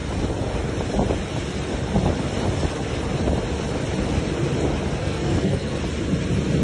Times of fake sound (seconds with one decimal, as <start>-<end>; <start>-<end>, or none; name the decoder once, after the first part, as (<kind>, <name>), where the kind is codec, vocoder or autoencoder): 5.0-5.8 (codec, SNAC)

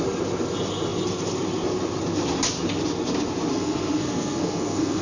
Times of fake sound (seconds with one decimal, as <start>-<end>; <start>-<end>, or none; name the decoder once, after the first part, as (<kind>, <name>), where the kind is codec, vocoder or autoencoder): 3.5-5.0 (codec, SNAC)

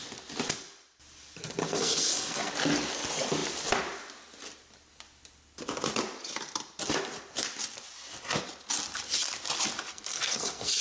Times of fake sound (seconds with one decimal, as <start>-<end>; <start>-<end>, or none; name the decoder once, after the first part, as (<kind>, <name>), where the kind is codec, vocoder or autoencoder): 1.6-2.5 (codec, SNAC); 9.9-10.8